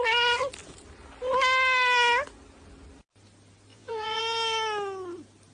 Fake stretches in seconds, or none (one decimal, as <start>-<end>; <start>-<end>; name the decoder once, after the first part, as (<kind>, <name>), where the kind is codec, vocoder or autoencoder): 3.7-4.2 (vocoder, Vocos)